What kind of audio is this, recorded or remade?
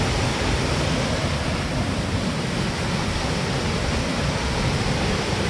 recorded